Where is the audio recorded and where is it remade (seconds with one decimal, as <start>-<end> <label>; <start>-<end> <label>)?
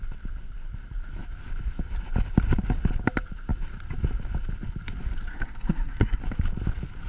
0.0-5.3 recorded; 5.3-6.2 remade; 6.2-7.1 recorded